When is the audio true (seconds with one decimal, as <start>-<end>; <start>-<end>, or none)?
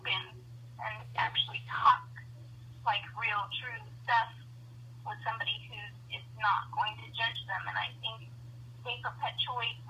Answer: 0.0-1.0; 1.9-9.9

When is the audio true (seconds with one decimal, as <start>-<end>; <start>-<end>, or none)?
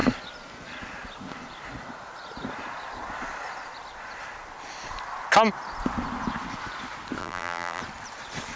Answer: 0.0-7.2; 7.8-8.6